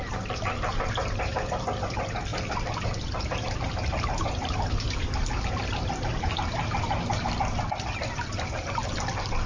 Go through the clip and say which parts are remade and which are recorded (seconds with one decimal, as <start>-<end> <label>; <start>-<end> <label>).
0.0-9.5 recorded